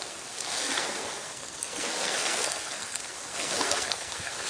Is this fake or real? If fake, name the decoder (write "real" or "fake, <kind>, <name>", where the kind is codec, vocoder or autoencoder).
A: fake, codec, SNAC